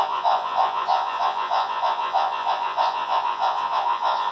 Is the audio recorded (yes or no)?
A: no